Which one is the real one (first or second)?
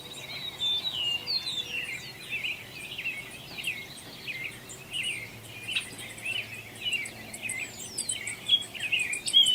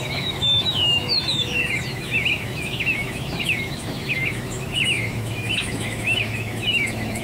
first